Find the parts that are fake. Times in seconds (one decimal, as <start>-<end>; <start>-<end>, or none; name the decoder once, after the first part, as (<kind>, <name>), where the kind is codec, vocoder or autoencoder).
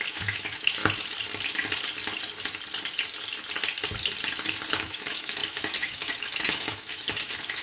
0.0-0.8 (autoencoder, DAC-VAE); 4.7-7.6